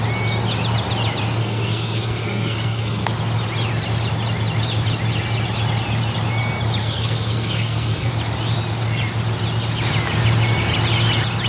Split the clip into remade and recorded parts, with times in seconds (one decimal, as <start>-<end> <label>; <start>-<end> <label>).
0.0-1.4 recorded; 1.4-3.1 remade; 3.1-6.8 recorded; 6.8-8.1 remade; 8.1-11.5 recorded